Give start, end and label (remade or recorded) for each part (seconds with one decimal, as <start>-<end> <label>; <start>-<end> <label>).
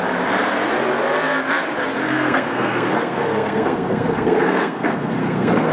0.0-2.0 recorded; 2.0-5.7 remade